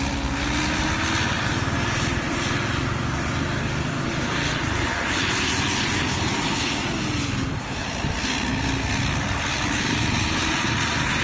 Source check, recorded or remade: recorded